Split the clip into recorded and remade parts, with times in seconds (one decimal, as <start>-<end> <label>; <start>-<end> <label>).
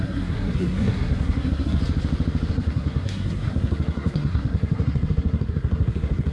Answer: 0.0-1.8 remade; 1.8-2.5 recorded; 2.5-6.3 remade